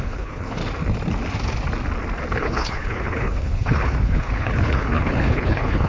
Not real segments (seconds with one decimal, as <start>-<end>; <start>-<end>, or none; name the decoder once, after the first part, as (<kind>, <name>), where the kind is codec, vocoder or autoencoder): 0.0-0.6 (codec, HILCodec); 2.4-5.9